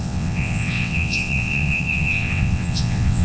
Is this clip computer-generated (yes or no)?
yes